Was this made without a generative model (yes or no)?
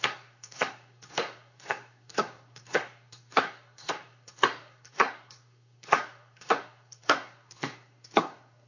no